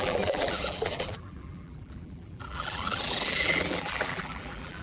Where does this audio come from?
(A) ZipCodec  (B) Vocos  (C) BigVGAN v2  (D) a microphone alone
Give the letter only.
C